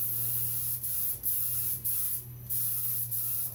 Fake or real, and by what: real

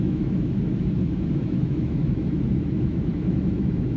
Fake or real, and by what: fake, autoencoder, DAC-VAE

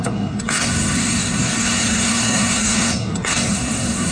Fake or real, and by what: fake, codec, SNAC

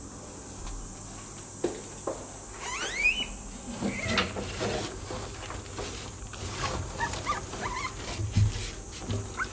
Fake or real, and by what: real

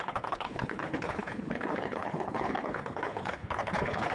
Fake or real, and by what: fake, codec, HILCodec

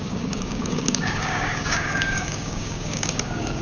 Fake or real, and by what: fake, codec, DAC